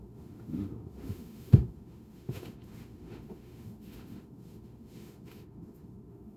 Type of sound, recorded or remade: remade